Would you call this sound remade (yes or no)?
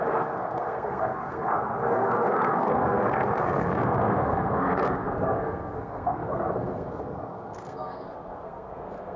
yes